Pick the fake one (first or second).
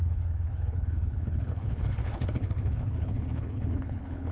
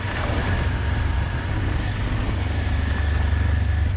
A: first